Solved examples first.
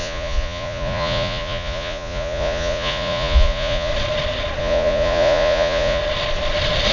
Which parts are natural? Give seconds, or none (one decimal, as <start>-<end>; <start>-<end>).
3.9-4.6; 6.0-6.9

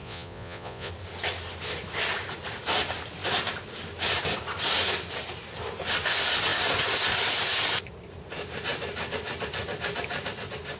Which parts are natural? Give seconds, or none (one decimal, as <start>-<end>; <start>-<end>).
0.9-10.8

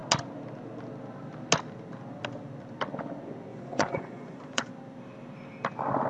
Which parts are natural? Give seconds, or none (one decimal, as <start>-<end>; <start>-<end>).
0.0-3.5; 4.7-6.1

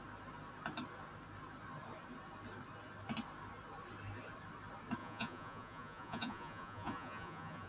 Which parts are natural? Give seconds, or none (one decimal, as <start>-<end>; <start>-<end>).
0.0-5.0

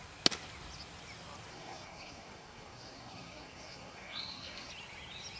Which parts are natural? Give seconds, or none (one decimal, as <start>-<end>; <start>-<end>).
0.0-1.5; 4.7-5.4

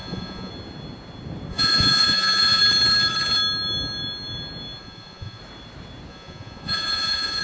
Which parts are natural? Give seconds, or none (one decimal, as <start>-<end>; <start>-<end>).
0.5-1.5; 2.6-4.8; 5.4-6.1